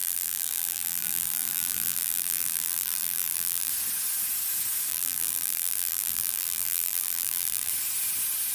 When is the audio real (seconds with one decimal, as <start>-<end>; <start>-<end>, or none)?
3.7-4.9; 7.7-8.5